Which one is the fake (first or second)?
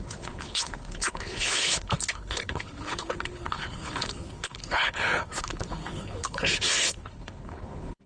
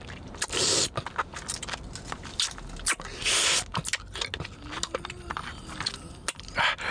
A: first